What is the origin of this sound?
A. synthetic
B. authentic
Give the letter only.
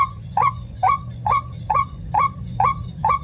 A